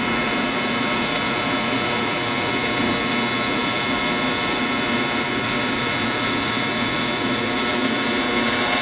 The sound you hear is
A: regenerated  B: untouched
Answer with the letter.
A